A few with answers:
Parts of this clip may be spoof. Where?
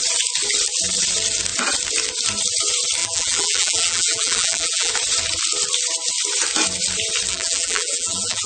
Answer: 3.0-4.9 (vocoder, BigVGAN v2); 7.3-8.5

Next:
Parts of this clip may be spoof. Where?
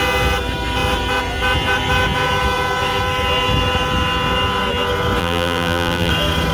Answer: 5.2-6.1 (vocoder, BigVGAN v2)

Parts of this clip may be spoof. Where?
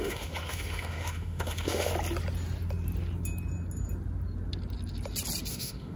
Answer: 0.0-1.9 (autoencoder, DAC-VAE); 5.5-6.0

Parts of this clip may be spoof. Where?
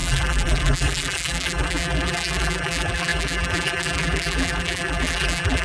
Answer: 0.0-5.6 (vocoder, BigVGAN v2)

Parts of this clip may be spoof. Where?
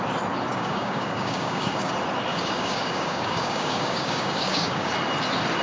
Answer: 0.5-1.9 (codec, DAC); 2.3-4.9